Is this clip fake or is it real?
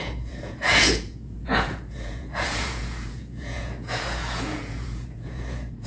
fake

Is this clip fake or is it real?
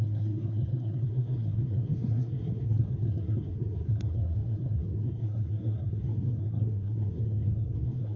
fake